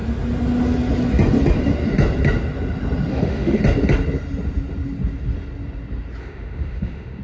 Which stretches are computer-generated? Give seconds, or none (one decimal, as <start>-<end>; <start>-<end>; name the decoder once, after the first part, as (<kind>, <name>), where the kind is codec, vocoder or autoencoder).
3.1-3.6 (autoencoder, DAC-VAE); 6.2-7.2